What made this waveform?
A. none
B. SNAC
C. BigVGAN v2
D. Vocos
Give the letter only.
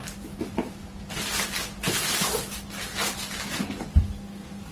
A